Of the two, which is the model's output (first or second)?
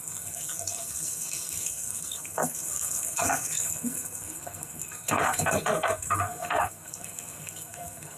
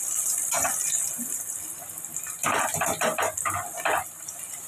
first